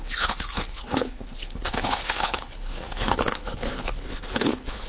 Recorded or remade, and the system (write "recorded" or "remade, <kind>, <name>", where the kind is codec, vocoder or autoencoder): remade, codec, HILCodec